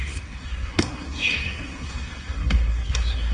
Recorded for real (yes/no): no